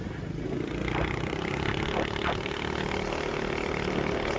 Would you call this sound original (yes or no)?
yes